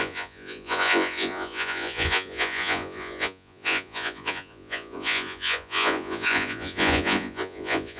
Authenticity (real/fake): fake